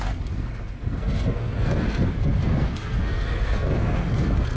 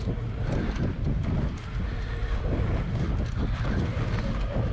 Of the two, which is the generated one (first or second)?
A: first